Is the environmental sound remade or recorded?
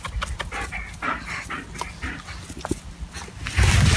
recorded